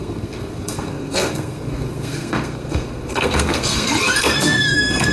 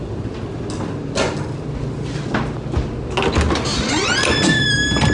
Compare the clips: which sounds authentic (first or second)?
second